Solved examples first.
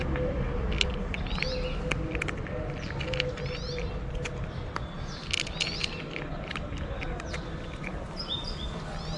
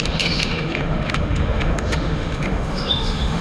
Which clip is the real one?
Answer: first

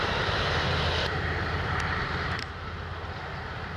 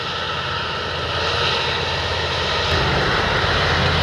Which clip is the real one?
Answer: second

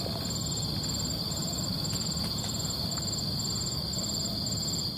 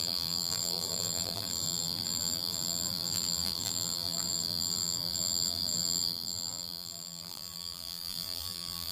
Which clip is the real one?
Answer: first